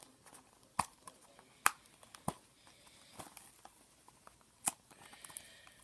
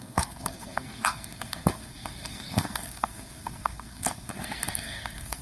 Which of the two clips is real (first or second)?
first